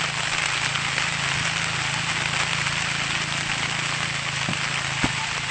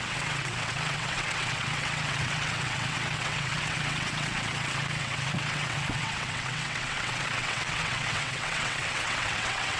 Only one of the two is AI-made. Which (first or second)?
second